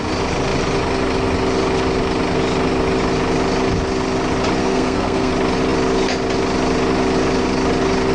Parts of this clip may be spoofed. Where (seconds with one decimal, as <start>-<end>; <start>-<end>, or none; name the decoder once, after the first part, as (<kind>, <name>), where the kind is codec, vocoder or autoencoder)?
4.6-5.3 (codec, SNAC)